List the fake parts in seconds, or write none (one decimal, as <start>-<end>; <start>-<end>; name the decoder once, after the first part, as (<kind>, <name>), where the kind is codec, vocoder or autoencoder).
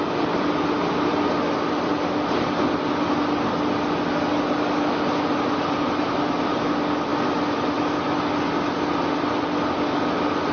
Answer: none